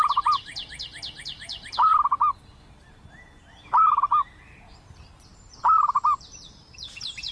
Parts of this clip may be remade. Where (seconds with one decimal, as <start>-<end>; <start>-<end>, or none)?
0.0-0.5; 1.2-1.9; 4.0-7.3